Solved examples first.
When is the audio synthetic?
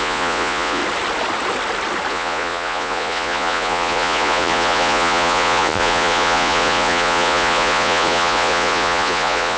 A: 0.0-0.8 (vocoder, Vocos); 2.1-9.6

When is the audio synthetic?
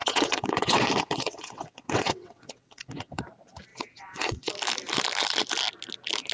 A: 0.0-3.2 (vocoder, WaveNeXt); 3.7-4.5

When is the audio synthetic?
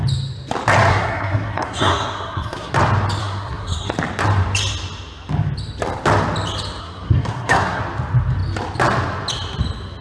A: 0.9-2.7 (codec, SNAC); 3.2-3.9; 6.8-7.8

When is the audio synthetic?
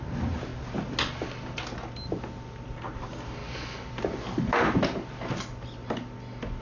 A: none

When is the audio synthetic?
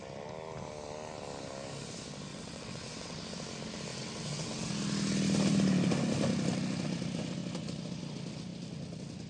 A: 2.3-3.2 (vocoder, WaveNeXt); 3.9-4.7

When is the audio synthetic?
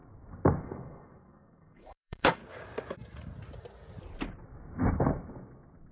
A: 0.6-2.4 (autoencoder, DAC-VAE)